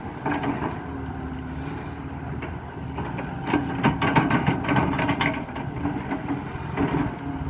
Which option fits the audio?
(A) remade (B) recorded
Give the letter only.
B